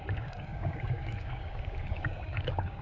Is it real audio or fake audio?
fake